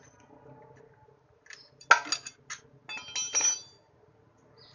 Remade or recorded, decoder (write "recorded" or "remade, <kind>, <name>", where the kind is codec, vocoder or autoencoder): recorded